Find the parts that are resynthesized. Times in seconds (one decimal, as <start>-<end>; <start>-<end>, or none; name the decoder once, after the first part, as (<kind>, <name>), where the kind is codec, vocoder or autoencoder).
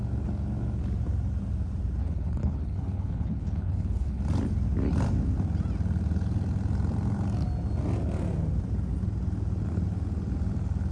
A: 2.0-4.2 (codec, HILCodec)